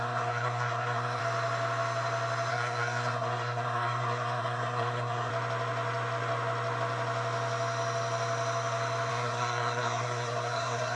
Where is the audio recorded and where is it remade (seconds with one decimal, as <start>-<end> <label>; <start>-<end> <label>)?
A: 0.0-1.2 remade; 1.2-2.5 recorded; 2.5-5.3 remade; 5.3-9.1 recorded; 9.1-11.0 remade